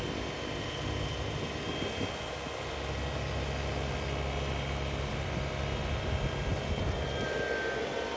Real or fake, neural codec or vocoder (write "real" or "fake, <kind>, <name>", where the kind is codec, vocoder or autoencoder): real